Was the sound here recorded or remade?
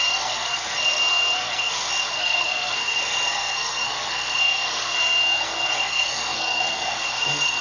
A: remade